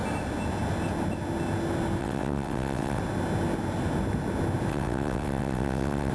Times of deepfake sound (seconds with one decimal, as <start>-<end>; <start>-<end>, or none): 2.0-3.0; 4.7-6.1